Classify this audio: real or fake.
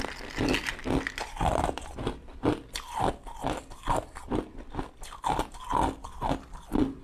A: real